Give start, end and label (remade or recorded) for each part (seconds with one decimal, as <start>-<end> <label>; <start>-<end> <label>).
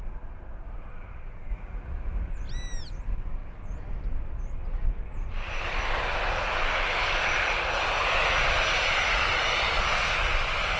0.0-1.5 recorded; 1.5-2.3 remade; 2.3-10.8 recorded